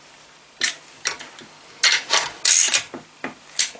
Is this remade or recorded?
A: recorded